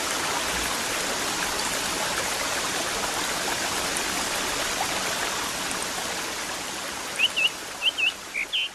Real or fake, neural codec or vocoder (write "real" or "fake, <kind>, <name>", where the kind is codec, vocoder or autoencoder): real